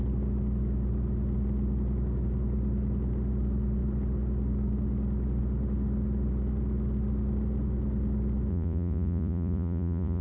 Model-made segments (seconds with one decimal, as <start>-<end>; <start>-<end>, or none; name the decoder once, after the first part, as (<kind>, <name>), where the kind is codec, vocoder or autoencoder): 8.5-10.2 (vocoder, Vocos)